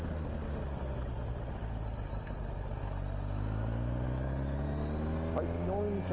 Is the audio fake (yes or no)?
no